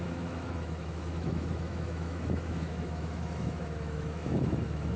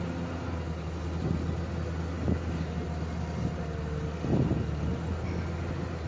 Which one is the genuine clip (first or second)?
second